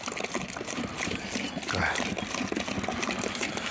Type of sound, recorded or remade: recorded